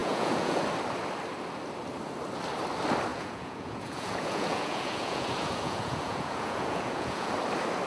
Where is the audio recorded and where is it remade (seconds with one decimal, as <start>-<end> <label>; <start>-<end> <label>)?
0.0-0.6 remade; 0.6-3.1 recorded; 3.1-7.3 remade; 7.3-7.9 recorded

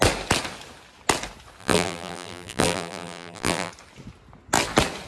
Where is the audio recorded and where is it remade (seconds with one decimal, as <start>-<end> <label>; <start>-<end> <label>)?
0.0-1.6 recorded; 1.6-3.7 remade; 3.7-5.1 recorded